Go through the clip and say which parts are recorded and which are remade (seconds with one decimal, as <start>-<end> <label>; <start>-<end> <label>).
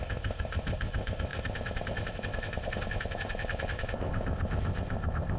0.0-5.4 remade